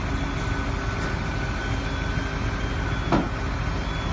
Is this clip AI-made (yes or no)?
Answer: no